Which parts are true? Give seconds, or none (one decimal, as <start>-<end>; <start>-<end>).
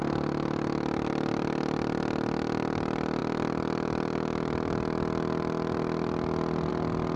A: 0.0-7.2